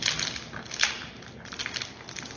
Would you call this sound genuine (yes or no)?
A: yes